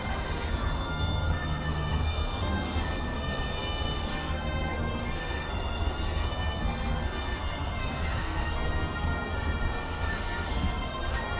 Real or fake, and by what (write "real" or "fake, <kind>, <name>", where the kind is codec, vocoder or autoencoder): fake, codec, SNAC